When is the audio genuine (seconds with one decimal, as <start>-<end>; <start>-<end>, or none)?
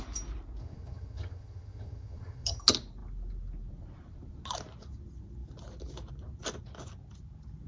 0.0-0.6; 2.6-7.7